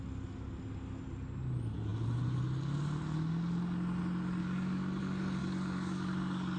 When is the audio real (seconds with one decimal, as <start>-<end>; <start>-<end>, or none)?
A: 0.0-4.4; 5.0-5.4